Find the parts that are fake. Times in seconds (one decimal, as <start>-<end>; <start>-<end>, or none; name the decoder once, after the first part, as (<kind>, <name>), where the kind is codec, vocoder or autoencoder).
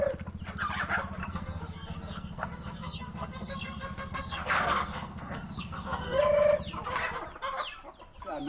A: 1.2-6.2 (codec, SNAC)